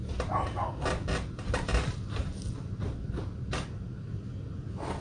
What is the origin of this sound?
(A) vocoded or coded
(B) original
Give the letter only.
B